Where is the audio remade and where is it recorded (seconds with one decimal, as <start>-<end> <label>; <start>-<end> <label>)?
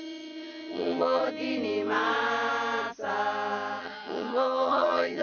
0.0-1.2 remade; 1.2-3.8 recorded; 3.8-5.2 remade